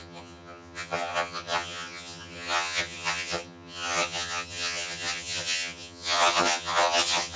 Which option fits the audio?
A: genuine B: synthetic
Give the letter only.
B